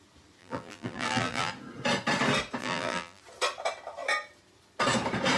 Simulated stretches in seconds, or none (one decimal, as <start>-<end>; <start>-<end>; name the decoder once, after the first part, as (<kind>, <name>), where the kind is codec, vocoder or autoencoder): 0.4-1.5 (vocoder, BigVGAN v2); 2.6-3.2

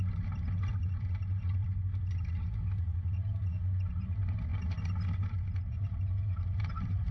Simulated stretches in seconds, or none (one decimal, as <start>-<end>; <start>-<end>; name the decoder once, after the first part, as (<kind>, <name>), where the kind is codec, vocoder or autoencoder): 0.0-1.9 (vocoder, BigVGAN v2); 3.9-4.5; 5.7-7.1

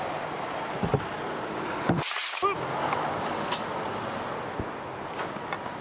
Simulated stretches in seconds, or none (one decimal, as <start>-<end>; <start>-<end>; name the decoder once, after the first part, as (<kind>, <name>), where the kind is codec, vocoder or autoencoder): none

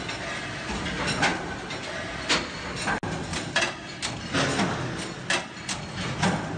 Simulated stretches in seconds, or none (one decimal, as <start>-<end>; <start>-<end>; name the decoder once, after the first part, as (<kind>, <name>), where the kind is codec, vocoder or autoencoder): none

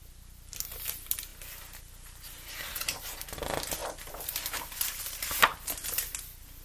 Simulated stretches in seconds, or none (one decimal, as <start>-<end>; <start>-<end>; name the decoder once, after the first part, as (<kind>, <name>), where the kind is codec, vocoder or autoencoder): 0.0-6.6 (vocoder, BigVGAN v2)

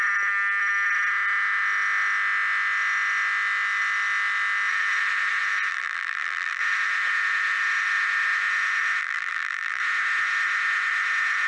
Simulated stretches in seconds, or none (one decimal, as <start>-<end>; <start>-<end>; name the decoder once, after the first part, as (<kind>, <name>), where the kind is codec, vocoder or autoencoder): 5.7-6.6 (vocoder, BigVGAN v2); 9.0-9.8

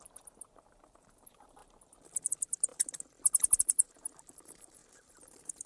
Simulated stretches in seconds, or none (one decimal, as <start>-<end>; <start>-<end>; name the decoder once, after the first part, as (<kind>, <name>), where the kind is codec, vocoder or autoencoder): 0.0-2.7 (vocoder, BigVGAN v2); 3.6-5.7